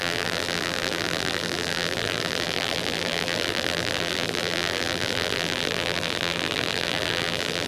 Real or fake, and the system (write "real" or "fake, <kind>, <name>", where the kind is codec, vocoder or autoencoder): fake, vocoder, BigVGAN v2